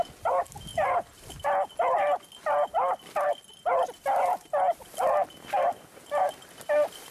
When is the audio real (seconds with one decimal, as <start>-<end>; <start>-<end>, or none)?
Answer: 0.0-7.1

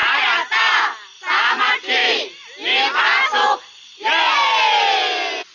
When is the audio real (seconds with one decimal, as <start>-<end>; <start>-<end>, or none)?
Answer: 0.0-1.5; 2.0-5.5